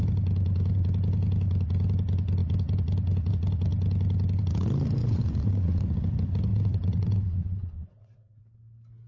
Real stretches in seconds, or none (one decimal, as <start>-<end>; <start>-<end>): 0.0-5.0; 5.8-6.5; 8.4-9.1